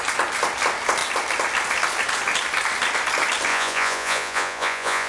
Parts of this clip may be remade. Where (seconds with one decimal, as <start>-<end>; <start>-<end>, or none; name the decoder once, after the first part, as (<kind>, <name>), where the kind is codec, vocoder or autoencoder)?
3.5-5.1 (vocoder, Vocos)